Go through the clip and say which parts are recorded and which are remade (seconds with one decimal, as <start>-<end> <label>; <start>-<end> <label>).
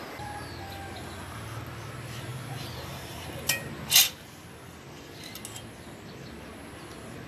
0.0-7.3 recorded